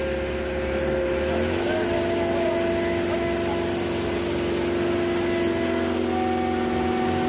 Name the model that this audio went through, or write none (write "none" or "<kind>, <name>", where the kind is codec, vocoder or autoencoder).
none